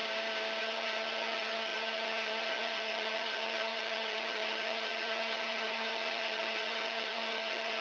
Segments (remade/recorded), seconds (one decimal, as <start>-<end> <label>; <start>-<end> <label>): 0.0-0.6 recorded; 0.6-7.8 remade